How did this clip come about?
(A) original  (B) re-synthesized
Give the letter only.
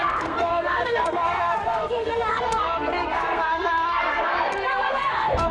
B